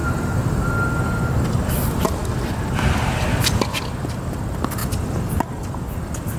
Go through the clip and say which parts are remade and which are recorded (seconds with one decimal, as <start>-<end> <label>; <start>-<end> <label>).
0.0-0.7 remade; 0.7-6.4 recorded